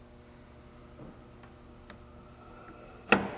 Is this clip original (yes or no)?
yes